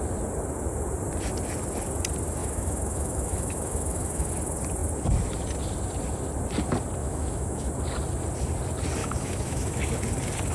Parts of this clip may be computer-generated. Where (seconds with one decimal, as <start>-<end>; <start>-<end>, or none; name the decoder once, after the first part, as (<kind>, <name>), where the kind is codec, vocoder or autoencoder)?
2.4-4.3 (autoencoder, DAC-VAE); 7.0-7.7; 9.0-9.8